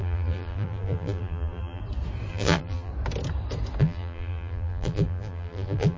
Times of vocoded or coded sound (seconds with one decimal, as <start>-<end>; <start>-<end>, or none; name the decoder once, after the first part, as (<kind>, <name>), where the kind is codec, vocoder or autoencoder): 0.0-1.8 (vocoder, BigVGAN v2); 2.3-2.9; 3.8-6.0